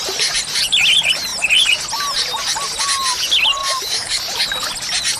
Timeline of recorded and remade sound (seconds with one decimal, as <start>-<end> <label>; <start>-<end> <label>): 0.0-3.6 recorded; 3.6-4.2 remade; 4.2-5.2 recorded